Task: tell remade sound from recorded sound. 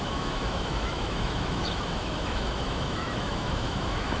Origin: remade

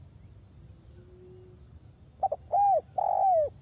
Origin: recorded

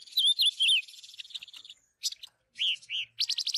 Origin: recorded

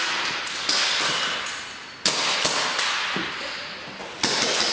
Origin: recorded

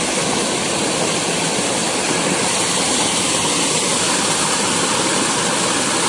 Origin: recorded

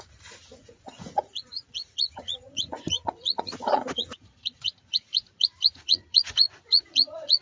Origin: remade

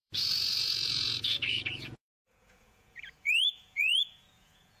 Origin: remade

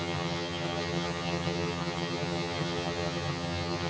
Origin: remade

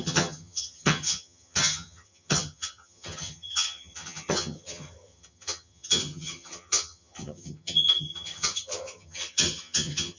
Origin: remade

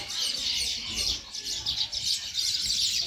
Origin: recorded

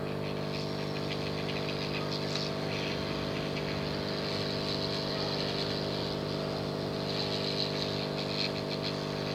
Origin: recorded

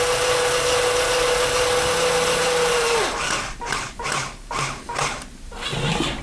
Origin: recorded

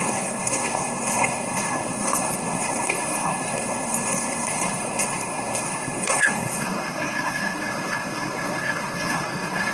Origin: remade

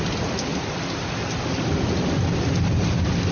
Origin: recorded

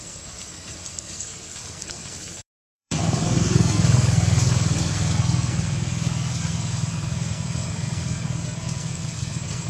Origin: remade